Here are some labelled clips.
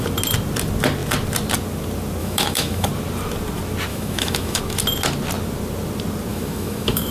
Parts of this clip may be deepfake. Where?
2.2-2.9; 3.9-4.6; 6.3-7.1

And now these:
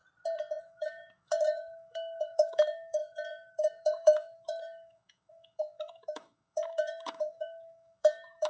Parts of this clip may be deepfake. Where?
0.6-8.5

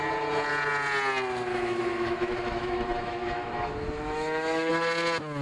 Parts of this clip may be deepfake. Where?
1.5-4.7

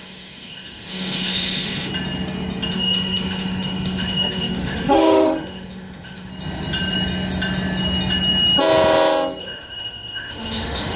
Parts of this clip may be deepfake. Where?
0.0-1.9; 2.7-6.3; 9.4-11.0

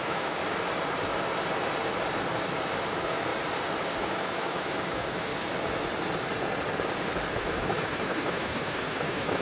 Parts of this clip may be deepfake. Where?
0.0-0.4; 2.9-3.3; 4.0-5.3; 7.3-9.4